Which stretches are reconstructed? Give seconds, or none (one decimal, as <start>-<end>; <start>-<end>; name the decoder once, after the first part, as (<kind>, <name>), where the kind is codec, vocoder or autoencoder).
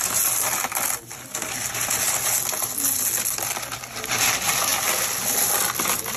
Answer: none